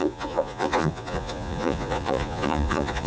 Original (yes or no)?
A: no